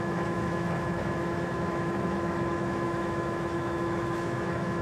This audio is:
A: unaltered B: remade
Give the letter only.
B